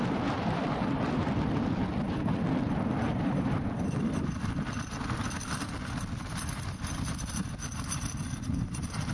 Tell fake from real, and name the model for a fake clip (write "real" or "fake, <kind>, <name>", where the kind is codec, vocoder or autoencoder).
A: real